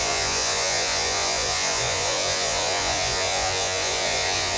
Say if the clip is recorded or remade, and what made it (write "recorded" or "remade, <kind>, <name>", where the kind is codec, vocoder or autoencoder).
remade, vocoder, Vocos